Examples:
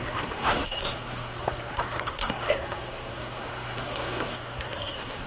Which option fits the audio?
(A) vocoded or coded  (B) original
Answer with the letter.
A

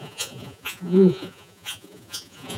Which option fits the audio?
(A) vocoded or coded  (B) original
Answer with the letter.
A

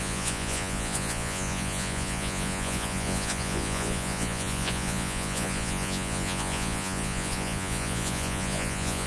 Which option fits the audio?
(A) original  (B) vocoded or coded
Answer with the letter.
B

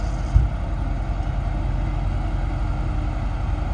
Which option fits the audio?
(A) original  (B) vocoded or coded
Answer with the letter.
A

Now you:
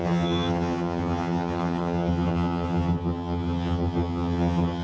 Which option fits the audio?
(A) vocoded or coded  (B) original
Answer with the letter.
A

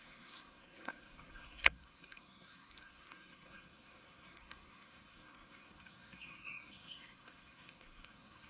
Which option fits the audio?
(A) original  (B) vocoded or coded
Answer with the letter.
B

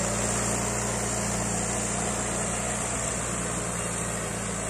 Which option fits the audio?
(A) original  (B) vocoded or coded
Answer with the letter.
A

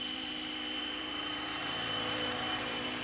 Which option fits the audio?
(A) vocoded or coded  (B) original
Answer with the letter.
A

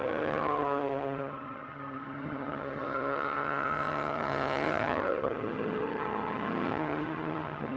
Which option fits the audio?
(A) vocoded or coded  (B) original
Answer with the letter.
A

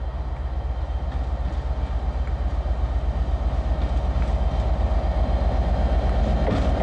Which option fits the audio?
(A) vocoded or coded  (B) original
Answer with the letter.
B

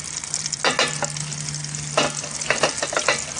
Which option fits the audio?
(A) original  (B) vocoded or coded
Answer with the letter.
A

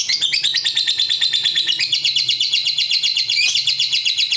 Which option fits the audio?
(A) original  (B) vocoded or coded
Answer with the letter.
B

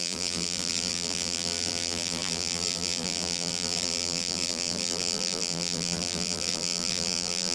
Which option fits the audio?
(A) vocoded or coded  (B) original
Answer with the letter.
A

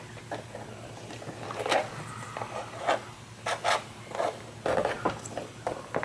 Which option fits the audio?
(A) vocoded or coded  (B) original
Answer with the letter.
B